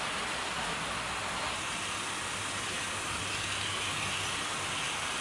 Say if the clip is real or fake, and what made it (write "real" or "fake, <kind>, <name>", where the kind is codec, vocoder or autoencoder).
real